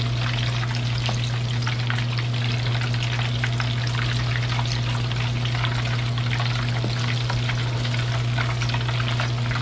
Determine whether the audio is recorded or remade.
recorded